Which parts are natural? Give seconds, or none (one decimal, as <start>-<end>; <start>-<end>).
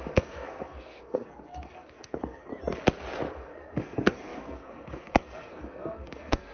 2.5-3.3